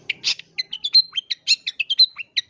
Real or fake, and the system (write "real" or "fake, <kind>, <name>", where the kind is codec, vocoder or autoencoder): real